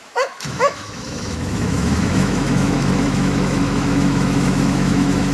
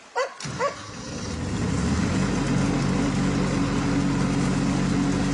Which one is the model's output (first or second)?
first